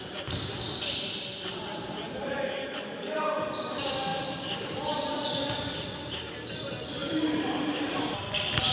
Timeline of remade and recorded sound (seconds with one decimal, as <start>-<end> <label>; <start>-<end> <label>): 0.0-1.6 recorded; 1.6-3.2 remade; 3.2-4.1 recorded; 4.1-6.3 remade; 6.3-7.0 recorded; 7.0-8.0 remade; 8.0-8.7 recorded